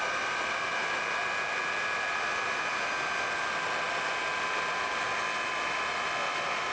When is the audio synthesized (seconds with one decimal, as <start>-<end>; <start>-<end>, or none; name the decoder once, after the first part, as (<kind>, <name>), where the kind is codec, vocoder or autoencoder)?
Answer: none